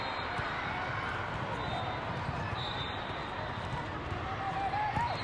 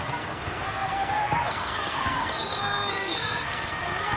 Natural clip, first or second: first